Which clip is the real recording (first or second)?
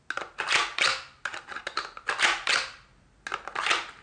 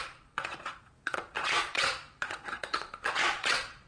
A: first